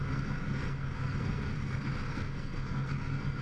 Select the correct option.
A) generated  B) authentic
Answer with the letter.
A